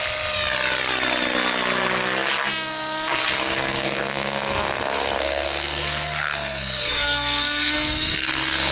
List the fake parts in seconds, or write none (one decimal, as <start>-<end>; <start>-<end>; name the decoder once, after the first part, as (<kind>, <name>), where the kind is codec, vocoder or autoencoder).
3.4-8.7 (codec, SNAC)